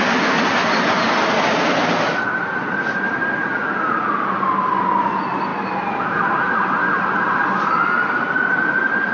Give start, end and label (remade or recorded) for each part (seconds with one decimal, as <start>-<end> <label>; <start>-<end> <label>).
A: 0.0-9.1 recorded